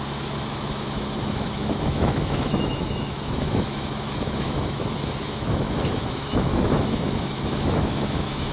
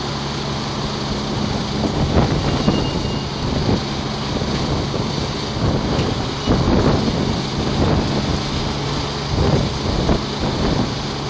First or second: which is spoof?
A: first